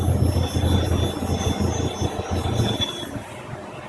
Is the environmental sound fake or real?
real